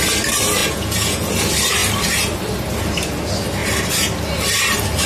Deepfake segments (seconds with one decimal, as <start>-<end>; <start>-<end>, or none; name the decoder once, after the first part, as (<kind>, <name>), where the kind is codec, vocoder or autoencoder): 0.6-1.3 (vocoder, Vocos)